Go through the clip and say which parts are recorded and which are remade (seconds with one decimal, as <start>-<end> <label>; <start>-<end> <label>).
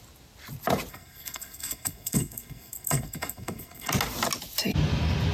0.0-0.9 recorded; 0.9-3.9 remade; 3.9-5.3 recorded